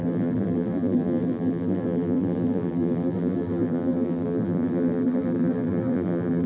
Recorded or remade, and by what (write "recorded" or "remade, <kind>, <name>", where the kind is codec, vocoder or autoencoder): remade, vocoder, BigVGAN v2